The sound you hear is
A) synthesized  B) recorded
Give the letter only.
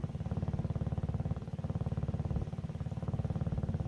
B